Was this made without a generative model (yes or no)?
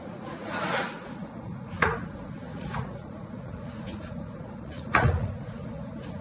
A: no